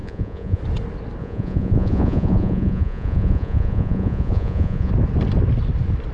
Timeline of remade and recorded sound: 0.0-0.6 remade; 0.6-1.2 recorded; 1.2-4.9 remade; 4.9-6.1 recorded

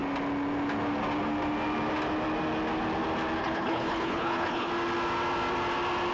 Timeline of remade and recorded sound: 0.0-3.4 recorded; 3.4-4.7 remade; 4.7-6.1 recorded

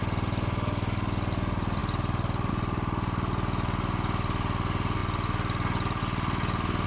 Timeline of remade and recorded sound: 0.0-6.9 recorded